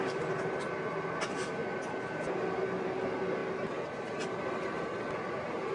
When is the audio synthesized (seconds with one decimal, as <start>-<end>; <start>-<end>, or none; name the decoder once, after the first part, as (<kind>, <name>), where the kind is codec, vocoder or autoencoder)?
none